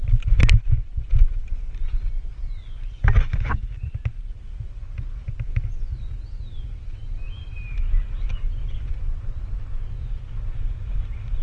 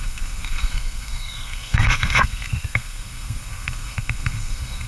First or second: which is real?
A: first